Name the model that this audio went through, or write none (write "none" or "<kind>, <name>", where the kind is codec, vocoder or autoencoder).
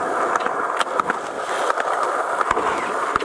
none